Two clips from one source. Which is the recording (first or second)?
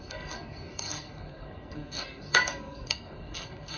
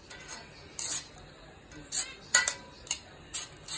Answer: second